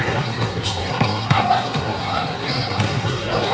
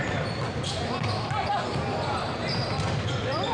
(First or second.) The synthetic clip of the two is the first